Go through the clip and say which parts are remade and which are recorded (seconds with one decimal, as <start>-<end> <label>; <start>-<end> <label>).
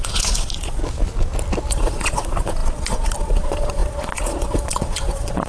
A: 0.0-0.8 remade; 0.8-1.7 recorded; 1.7-5.5 remade